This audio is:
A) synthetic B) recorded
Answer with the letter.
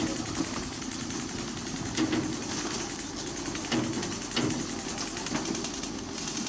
B